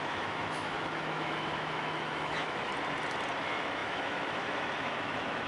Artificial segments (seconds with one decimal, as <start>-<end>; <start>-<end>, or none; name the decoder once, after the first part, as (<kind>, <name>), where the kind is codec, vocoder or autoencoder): 0.0-2.7 (autoencoder, DAC-VAE); 3.4-5.5